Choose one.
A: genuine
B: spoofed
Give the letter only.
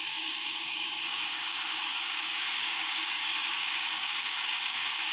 B